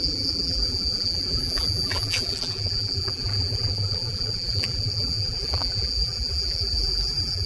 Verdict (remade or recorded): remade